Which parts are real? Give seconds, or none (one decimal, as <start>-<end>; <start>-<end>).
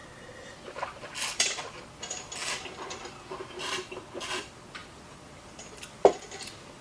0.0-1.0; 2.4-4.3